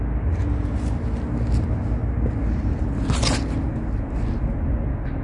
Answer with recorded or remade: recorded